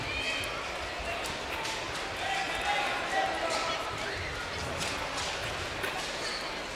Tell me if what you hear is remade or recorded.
recorded